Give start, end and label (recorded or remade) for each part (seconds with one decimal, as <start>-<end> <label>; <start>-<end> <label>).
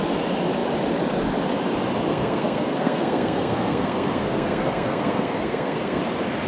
0.0-2.1 recorded; 2.1-6.0 remade; 6.0-6.5 recorded